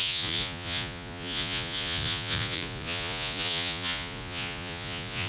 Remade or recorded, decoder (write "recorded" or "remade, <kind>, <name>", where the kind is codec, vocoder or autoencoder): remade, vocoder, Vocos